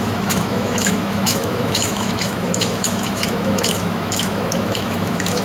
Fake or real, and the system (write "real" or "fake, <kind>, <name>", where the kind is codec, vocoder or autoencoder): fake, autoencoder, DAC-VAE